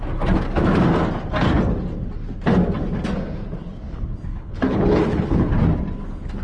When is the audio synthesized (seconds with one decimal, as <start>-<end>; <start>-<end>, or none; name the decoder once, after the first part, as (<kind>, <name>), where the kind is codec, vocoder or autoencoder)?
4.3-5.5 (codec, HILCodec)